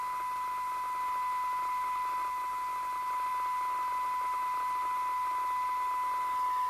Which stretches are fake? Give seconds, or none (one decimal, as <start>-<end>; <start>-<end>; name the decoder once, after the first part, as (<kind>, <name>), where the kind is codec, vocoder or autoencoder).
none